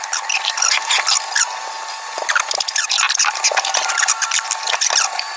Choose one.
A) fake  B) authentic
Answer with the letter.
B